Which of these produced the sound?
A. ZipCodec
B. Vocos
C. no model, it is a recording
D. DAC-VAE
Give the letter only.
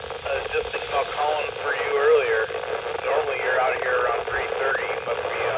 C